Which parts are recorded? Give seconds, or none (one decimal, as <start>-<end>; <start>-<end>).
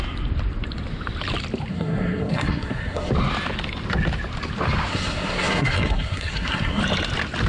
0.0-1.7; 3.1-4.9; 6.8-7.5